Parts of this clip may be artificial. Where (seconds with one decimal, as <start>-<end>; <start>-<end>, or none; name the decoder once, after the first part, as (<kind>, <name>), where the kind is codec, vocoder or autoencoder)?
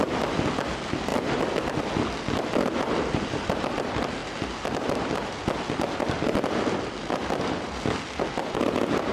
none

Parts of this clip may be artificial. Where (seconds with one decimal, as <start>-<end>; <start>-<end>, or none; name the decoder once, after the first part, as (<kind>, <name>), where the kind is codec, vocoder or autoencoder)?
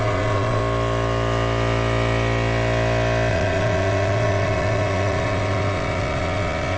0.0-0.6 (vocoder, Vocos); 3.3-6.8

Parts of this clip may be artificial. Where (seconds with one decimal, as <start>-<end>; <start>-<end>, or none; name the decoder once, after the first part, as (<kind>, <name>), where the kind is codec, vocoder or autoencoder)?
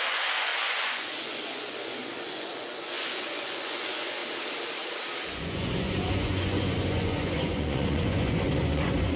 0.0-4.2 (vocoder, Vocos); 5.2-9.2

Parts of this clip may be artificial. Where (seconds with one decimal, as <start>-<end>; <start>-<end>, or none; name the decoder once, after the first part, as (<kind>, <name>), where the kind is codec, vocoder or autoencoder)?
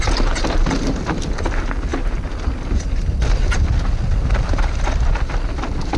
none